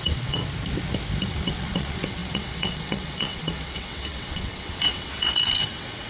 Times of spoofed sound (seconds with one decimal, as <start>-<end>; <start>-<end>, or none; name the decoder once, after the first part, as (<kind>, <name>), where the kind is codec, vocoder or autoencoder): 0.0-0.4 (vocoder, WaveNeXt); 1.3-6.1